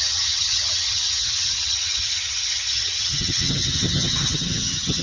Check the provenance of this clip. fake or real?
fake